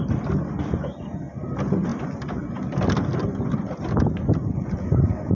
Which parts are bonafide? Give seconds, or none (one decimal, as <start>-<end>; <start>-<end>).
0.0-5.3